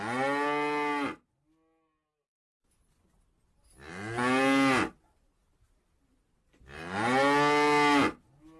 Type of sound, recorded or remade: recorded